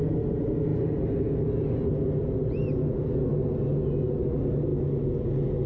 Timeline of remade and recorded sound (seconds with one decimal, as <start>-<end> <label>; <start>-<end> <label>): 0.0-5.7 recorded